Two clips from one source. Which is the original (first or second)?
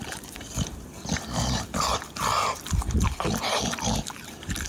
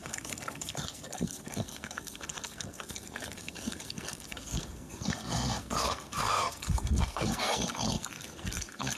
first